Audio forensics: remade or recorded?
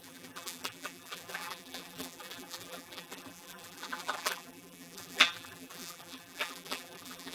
remade